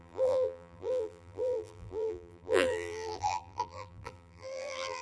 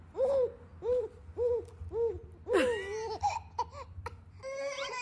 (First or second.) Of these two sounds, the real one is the second